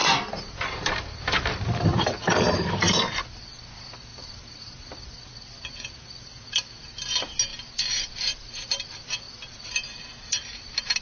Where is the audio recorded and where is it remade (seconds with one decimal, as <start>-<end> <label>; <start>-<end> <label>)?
0.0-3.2 remade; 3.2-4.1 recorded; 4.1-4.9 remade; 4.9-11.0 recorded